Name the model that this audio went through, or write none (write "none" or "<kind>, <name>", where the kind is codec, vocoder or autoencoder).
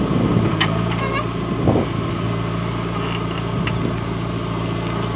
none